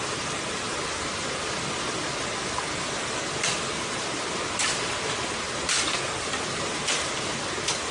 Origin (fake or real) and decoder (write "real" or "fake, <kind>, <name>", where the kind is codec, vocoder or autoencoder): real